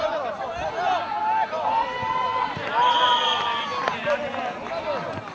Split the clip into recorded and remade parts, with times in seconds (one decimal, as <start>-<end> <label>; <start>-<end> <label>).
0.0-5.3 recorded

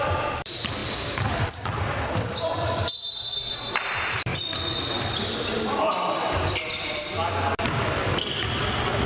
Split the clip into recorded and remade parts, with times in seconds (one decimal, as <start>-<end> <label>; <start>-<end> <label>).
0.0-9.1 remade

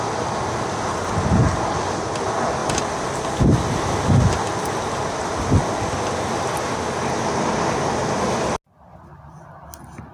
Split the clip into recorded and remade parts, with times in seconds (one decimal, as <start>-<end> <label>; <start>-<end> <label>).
0.0-10.1 recorded

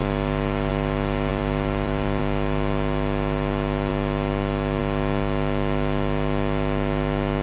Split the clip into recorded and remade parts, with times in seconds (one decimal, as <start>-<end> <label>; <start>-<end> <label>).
0.0-1.3 recorded; 1.3-2.2 remade; 2.2-7.4 recorded